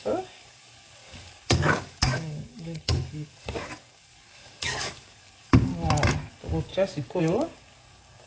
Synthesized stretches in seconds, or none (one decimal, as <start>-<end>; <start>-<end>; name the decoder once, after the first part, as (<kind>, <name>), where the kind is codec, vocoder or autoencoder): 0.0-5.7 (codec, DAC); 6.3-6.7; 7.2-8.3